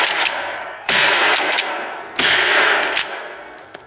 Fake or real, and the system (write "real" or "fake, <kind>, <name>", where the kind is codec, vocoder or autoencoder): fake, codec, SNAC